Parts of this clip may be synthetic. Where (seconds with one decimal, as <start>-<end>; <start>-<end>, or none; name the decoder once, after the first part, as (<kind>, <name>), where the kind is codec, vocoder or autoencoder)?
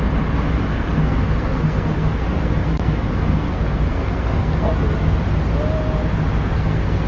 0.7-4.7 (codec, SNAC); 6.5-7.1